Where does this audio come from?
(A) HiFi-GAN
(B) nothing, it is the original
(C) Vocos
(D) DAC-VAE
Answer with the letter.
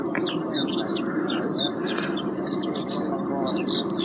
B